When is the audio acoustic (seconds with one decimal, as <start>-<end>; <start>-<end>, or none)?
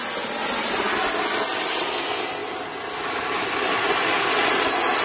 0.0-0.4; 0.9-5.0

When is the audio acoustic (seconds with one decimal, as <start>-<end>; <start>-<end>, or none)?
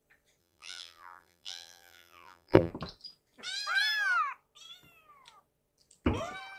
0.0-0.4; 2.7-6.6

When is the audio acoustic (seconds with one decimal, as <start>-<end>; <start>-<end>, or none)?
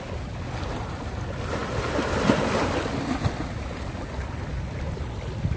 0.0-5.6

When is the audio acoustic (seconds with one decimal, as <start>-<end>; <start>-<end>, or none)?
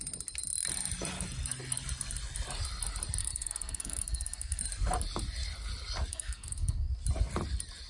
0.0-3.2; 4.6-6.1; 6.9-7.9